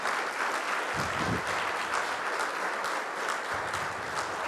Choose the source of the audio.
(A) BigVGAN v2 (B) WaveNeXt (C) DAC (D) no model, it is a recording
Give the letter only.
D